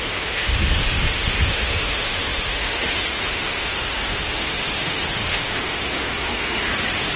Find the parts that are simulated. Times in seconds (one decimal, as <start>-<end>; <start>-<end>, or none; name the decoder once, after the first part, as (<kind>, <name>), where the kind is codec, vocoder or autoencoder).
0.0-6.7 (autoencoder, DAC-VAE)